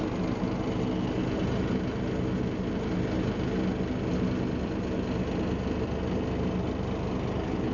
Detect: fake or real real